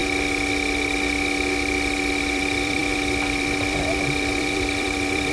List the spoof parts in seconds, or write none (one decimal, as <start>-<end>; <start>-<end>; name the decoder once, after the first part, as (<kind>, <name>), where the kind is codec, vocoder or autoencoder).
2.2-5.3 (vocoder, BigVGAN v2)